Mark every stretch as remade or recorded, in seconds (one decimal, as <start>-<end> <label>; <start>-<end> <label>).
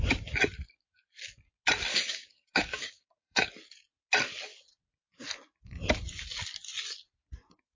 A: 0.0-1.9 recorded; 1.9-3.5 remade; 3.5-7.8 recorded